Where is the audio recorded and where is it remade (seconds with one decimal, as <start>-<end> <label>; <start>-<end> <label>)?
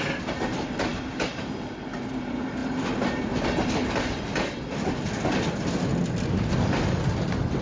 0.0-7.6 recorded